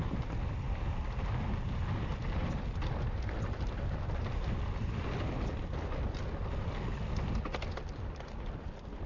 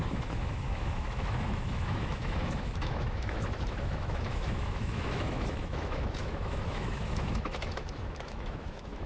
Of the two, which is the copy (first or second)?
second